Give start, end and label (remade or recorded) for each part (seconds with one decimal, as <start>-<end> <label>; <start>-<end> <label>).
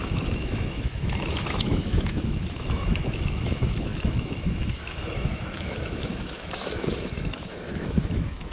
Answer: 0.0-8.5 remade